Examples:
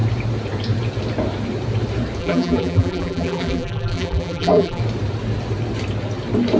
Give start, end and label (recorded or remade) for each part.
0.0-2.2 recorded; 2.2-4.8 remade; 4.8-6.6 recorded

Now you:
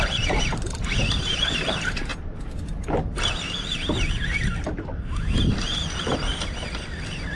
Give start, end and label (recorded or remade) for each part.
0.0-2.1 remade; 2.1-3.2 recorded; 3.2-6.3 remade; 6.3-7.3 recorded

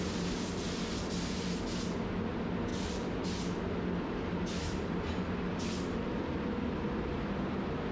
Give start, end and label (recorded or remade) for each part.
0.0-2.7 recorded; 2.7-3.2 remade; 3.2-4.6 recorded; 4.6-5.1 remade; 5.1-7.9 recorded

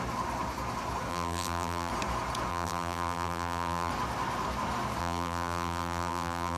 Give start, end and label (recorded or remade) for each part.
0.0-1.1 recorded; 1.1-1.9 remade; 1.9-2.5 recorded; 2.5-3.9 remade; 3.9-5.0 recorded; 5.0-6.6 remade

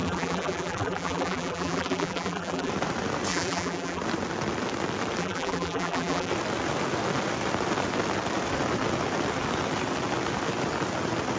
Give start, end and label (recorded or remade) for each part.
0.0-2.7 remade; 2.7-3.3 recorded; 3.3-4.0 remade; 4.0-5.2 recorded; 5.2-6.3 remade; 6.3-11.4 recorded

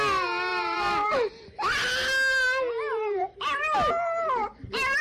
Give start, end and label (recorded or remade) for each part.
0.0-0.5 recorded; 0.5-1.1 remade; 1.1-2.9 recorded; 2.9-5.0 remade